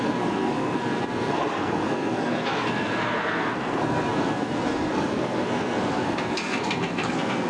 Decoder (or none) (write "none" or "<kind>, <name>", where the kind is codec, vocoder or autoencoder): codec, SNAC